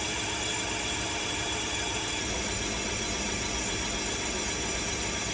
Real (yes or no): yes